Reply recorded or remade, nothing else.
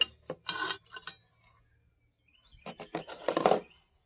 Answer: recorded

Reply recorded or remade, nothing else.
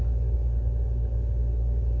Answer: recorded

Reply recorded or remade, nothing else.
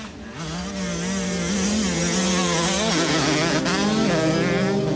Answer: recorded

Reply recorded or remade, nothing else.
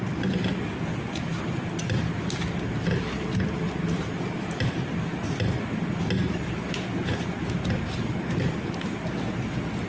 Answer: recorded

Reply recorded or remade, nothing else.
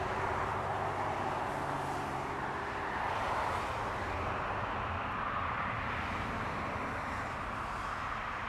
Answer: recorded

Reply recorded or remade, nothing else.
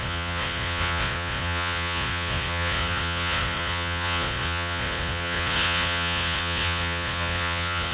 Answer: remade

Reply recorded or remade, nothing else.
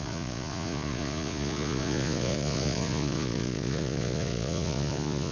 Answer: remade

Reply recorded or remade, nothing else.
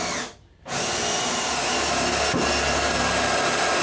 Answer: recorded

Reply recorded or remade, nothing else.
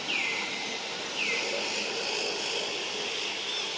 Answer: recorded